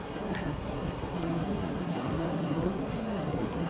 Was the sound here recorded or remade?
remade